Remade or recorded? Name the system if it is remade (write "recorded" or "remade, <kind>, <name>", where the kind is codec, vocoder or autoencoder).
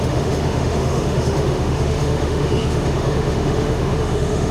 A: remade, autoencoder, DAC-VAE